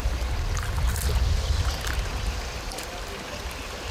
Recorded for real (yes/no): yes